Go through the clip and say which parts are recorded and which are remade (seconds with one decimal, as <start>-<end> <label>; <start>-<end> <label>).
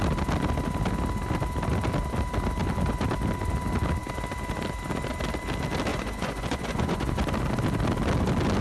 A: 0.0-5.9 recorded; 5.9-7.1 remade; 7.1-8.6 recorded